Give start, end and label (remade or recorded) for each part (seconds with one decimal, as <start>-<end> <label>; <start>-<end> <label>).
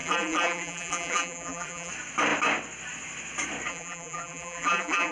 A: 0.0-1.9 remade; 1.9-3.7 recorded; 3.7-5.1 remade